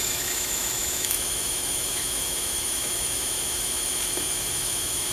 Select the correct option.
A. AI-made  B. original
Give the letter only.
A